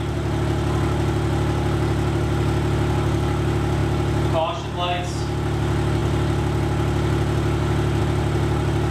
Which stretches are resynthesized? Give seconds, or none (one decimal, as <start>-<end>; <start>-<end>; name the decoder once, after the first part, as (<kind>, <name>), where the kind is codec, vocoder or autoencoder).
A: none